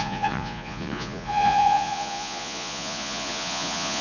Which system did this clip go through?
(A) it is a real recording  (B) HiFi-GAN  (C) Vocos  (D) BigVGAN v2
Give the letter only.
C